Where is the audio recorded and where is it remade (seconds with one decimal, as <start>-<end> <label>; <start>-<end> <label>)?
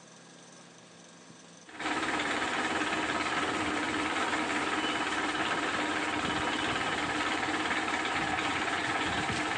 0.0-8.4 recorded; 8.4-9.2 remade; 9.2-9.6 recorded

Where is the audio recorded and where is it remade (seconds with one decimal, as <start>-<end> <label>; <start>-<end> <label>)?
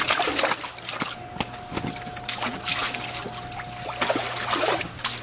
0.0-5.2 recorded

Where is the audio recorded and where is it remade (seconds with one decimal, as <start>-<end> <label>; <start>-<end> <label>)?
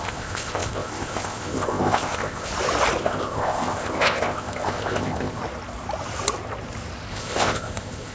0.0-2.5 remade; 2.5-3.0 recorded; 3.0-5.4 remade; 5.4-7.1 recorded; 7.1-8.1 remade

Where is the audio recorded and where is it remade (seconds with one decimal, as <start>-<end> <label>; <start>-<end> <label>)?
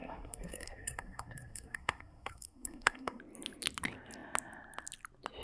0.0-3.2 remade; 3.2-5.4 recorded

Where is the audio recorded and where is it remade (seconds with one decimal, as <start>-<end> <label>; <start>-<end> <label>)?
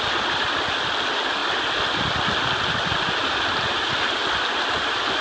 0.0-5.2 recorded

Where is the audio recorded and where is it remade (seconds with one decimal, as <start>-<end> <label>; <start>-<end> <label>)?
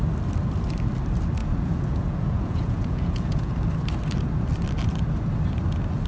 0.0-1.4 recorded; 1.4-3.5 remade; 3.5-6.1 recorded